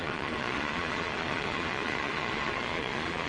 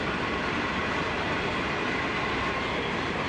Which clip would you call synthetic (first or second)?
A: first